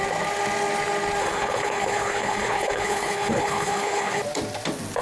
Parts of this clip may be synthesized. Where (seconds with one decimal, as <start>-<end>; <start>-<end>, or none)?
1.2-4.2